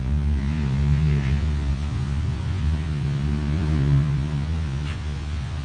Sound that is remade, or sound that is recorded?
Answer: remade